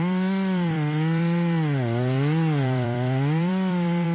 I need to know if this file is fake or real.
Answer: fake